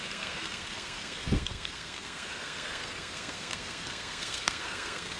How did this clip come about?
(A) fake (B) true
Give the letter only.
A